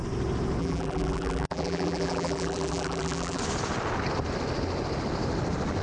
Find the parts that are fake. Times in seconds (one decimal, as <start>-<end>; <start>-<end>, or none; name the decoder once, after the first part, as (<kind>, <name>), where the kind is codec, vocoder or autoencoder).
0.6-3.4 (vocoder, BigVGAN v2)